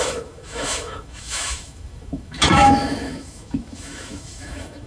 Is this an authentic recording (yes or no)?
no